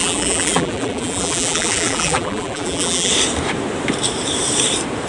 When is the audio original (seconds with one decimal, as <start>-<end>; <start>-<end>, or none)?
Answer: 3.1-5.1